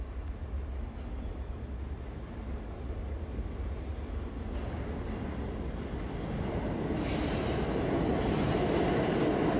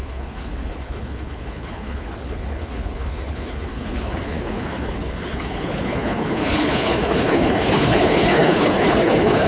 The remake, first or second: second